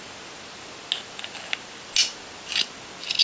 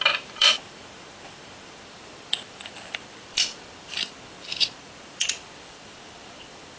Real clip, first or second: first